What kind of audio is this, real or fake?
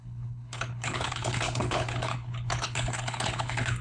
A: fake